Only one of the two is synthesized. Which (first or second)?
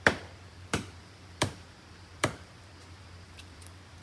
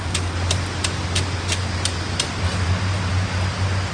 first